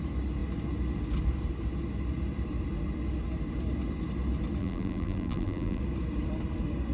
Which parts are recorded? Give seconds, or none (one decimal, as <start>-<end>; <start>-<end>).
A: 0.0-4.6; 5.8-6.9